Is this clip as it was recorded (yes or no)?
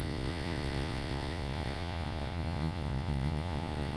no